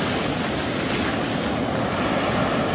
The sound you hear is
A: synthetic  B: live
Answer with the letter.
B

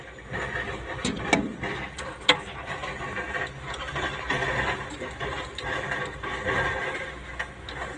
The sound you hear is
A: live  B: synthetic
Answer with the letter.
A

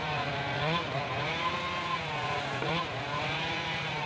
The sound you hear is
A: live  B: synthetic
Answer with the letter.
B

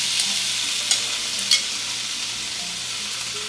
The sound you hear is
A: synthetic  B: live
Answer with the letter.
B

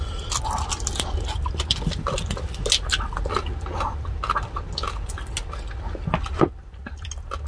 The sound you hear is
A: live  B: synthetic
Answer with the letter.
A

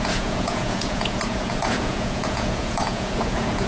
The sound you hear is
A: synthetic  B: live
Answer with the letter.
A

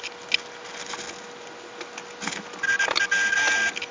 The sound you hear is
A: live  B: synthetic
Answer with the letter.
A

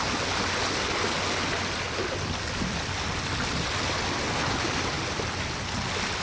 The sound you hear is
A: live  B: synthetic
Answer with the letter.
A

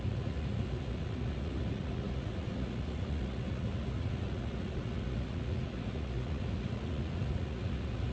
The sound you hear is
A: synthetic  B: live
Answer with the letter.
A